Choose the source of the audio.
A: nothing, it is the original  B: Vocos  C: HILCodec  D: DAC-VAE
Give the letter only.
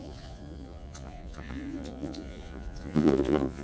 B